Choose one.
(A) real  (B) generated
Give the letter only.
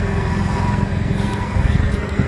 B